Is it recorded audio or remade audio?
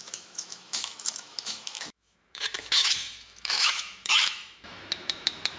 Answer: remade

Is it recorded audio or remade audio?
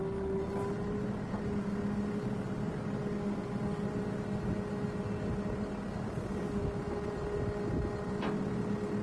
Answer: recorded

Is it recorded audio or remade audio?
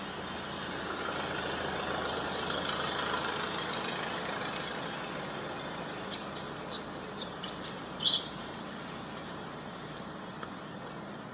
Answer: recorded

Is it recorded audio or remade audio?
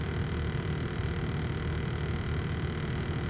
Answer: recorded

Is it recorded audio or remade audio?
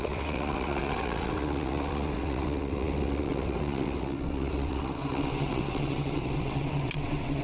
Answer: remade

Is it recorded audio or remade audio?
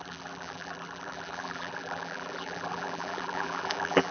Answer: remade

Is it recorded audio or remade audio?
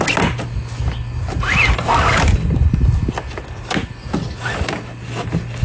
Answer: recorded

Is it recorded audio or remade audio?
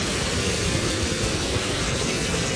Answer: remade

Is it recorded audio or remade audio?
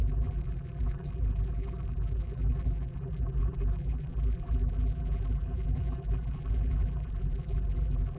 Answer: remade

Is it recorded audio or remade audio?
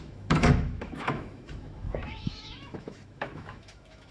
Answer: remade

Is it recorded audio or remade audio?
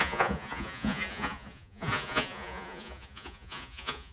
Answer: remade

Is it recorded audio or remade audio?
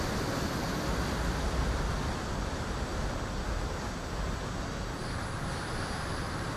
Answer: recorded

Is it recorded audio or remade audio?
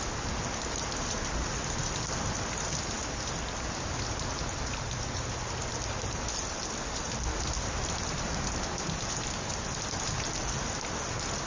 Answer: recorded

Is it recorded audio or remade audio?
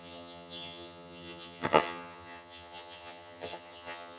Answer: remade